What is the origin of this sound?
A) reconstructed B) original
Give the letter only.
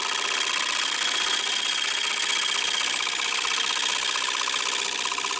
B